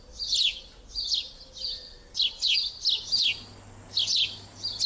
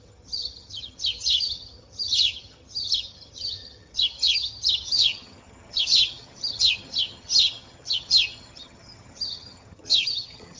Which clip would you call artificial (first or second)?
second